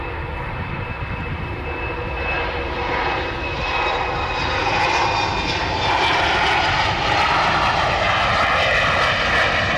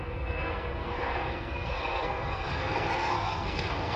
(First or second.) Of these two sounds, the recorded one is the first